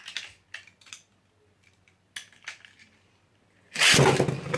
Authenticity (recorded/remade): recorded